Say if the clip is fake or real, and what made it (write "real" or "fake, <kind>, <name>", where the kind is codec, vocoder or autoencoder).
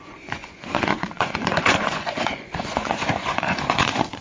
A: fake, vocoder, Vocos